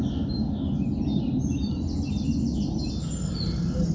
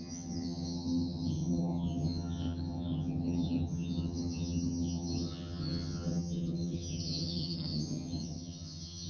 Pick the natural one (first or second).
first